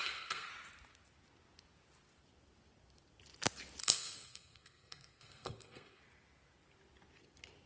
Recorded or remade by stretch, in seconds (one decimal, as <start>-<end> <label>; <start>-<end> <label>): 0.0-0.5 remade; 0.5-3.8 recorded; 3.8-6.0 remade; 6.0-7.7 recorded